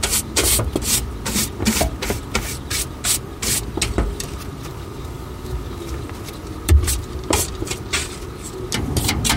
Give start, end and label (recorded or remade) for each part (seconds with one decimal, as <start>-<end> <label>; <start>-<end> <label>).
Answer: 0.0-4.7 recorded; 4.7-6.0 remade; 6.0-9.4 recorded